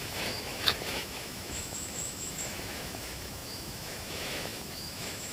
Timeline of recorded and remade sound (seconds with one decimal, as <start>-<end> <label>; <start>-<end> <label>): 0.0-5.3 remade